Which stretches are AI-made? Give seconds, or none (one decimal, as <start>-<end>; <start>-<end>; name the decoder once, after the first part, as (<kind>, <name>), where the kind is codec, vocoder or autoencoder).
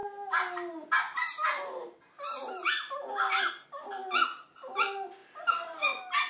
none